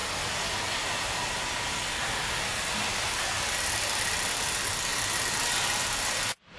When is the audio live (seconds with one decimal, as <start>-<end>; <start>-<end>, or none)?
0.0-6.6